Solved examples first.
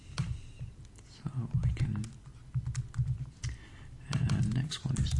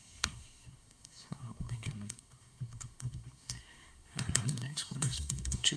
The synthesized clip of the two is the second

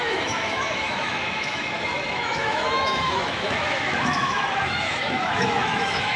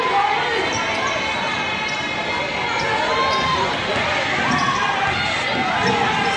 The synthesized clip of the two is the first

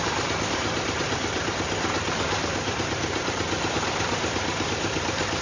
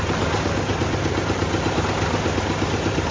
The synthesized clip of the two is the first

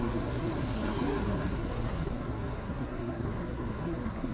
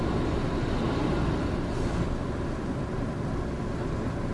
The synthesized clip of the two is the first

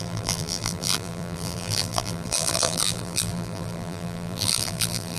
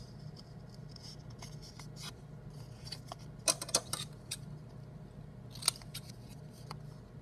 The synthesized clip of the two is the first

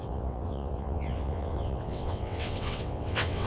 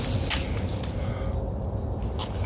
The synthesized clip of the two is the first